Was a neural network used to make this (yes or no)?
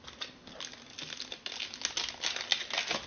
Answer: no